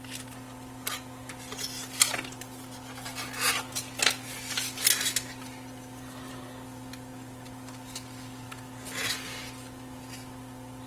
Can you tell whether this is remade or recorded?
recorded